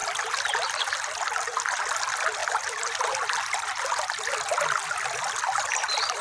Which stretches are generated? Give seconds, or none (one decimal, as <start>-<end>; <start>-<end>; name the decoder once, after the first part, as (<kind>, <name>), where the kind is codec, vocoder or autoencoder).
none